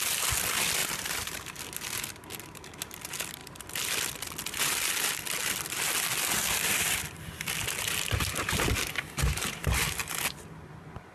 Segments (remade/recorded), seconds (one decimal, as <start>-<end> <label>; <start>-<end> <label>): 0.0-0.8 recorded; 0.8-1.6 remade; 1.6-9.2 recorded; 9.2-10.0 remade; 10.0-11.1 recorded